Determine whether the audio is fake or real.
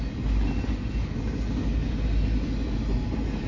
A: real